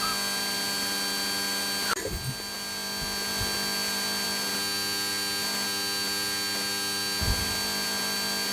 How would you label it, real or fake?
real